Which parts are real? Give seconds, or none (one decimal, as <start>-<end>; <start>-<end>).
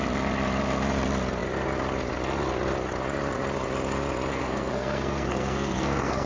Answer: 0.0-4.3